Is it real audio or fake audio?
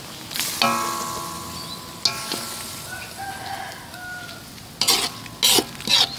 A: real